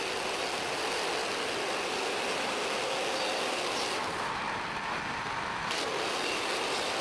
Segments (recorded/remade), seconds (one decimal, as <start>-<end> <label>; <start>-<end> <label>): 0.0-7.0 recorded